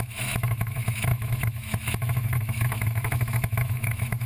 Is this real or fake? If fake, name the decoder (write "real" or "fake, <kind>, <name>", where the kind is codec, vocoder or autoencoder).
fake, autoencoder, DAC-VAE